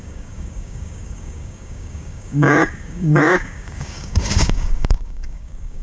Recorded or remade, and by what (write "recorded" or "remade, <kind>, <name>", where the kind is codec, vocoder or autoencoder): remade, codec, DAC